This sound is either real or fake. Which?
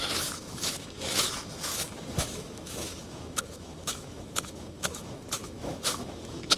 fake